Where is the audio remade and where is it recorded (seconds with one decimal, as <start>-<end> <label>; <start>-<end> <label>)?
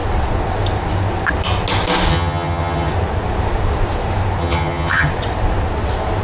0.0-2.1 recorded; 2.1-2.9 remade; 2.9-4.4 recorded; 4.4-5.1 remade; 5.1-6.2 recorded